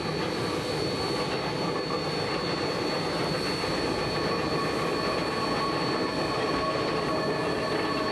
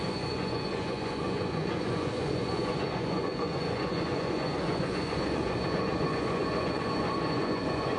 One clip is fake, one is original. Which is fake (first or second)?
second